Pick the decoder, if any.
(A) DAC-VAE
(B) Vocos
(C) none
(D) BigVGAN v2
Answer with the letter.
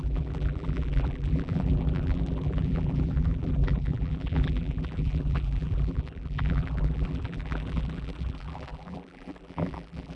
D